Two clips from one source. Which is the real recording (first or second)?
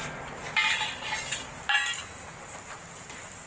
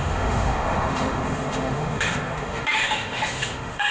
first